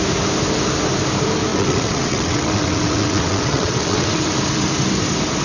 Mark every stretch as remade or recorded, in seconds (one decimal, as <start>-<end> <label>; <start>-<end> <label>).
0.0-1.5 recorded; 1.5-4.2 remade; 4.2-5.4 recorded